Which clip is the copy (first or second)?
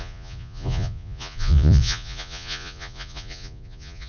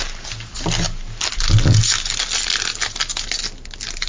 first